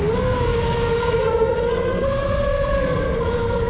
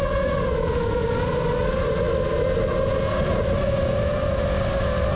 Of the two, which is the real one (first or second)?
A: second